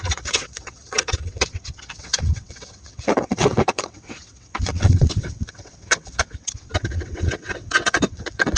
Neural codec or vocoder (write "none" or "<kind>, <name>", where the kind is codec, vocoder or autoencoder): vocoder, WaveNeXt